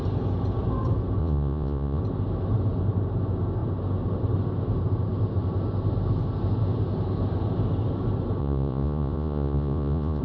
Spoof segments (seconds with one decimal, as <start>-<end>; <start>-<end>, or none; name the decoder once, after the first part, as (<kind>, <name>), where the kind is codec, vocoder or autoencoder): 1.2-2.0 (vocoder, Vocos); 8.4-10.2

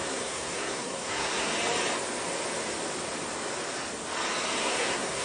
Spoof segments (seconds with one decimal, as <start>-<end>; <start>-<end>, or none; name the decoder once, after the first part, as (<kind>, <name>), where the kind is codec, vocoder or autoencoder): 0.0-1.5 (codec, SNAC); 4.6-5.2

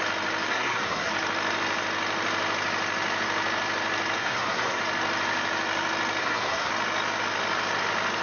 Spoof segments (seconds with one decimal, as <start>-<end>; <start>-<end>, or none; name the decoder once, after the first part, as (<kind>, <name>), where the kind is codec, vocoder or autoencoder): 0.5-1.1 (codec, SNAC); 4.2-4.8; 6.2-6.7

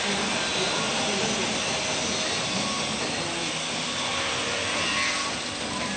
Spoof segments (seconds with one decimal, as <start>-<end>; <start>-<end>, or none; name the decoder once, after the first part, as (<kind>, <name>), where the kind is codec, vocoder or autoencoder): 0.9-1.4 (vocoder, BigVGAN v2); 3.4-5.1

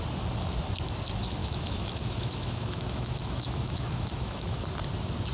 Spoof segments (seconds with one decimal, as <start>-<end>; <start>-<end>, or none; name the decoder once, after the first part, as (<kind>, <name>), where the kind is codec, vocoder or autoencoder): 1.4-4.6 (autoencoder, DAC-VAE)

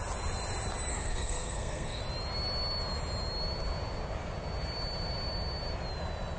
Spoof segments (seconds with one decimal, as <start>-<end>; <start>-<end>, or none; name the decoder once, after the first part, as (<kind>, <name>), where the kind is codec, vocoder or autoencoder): 0.9-2.0 (codec, SNAC)

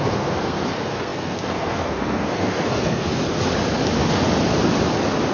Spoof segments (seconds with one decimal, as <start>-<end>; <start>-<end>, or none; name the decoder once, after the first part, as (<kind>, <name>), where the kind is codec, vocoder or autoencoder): 0.0-3.1 (codec, SNAC)

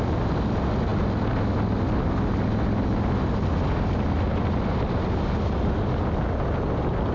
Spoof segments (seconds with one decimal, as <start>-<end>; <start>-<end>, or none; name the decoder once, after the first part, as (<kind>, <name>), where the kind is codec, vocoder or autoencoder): none